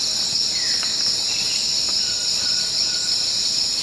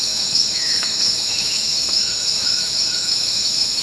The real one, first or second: first